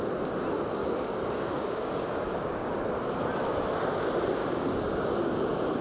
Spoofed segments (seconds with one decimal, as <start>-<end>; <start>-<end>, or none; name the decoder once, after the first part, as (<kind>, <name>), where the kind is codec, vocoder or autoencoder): 0.8-2.7 (codec, DAC); 4.4-5.1